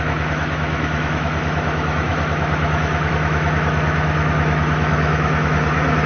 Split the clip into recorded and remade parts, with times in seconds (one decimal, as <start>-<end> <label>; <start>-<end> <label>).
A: 0.0-6.1 remade